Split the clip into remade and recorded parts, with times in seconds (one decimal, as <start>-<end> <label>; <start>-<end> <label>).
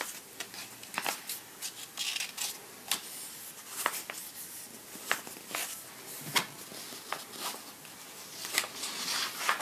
0.0-9.6 recorded